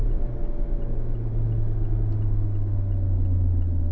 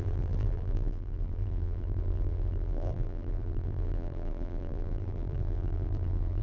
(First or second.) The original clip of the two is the first